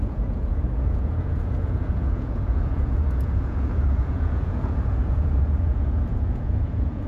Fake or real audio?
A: fake